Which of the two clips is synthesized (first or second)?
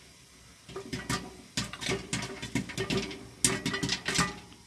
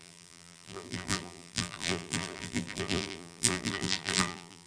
second